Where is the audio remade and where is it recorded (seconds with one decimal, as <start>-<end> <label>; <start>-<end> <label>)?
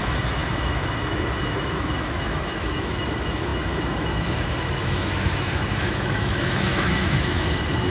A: 0.0-7.9 remade